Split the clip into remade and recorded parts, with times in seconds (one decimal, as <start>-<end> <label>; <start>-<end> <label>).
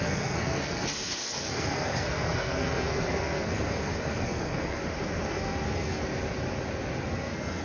0.0-4.8 remade; 4.8-5.3 recorded; 5.3-6.0 remade; 6.0-7.1 recorded; 7.1-7.6 remade